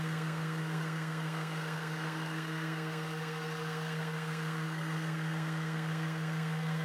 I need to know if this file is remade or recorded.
remade